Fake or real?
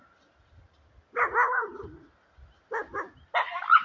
real